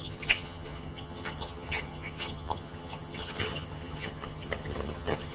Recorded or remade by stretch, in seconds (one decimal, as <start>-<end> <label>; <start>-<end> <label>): 0.0-5.3 remade